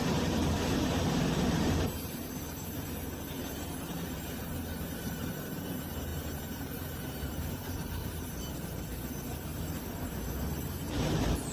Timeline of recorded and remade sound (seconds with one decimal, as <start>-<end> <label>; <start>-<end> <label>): 0.0-11.5 remade